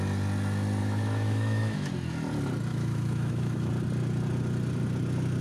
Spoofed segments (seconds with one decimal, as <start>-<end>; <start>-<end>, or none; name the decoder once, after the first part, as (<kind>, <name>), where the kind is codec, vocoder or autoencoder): 0.8-1.9 (autoencoder, DAC-VAE); 2.7-3.7